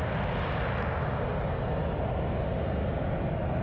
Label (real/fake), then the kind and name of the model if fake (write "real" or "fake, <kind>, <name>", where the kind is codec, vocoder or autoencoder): real